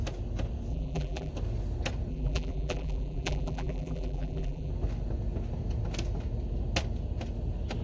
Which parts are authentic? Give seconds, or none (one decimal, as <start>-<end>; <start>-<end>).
0.0-0.7; 1.3-2.1; 4.7-7.8